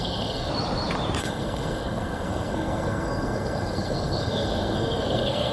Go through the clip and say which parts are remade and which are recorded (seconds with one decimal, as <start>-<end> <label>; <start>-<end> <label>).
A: 0.0-0.5 remade; 0.5-1.2 recorded; 1.2-5.5 remade